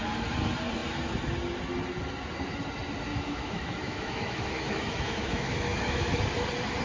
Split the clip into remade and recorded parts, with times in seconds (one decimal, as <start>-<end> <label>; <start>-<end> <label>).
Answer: 0.0-3.1 recorded; 3.1-6.2 remade; 6.2-6.8 recorded